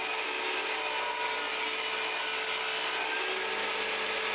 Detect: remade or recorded recorded